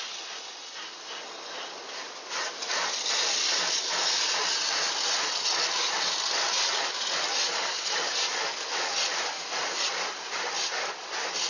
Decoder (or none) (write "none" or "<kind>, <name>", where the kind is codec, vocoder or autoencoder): none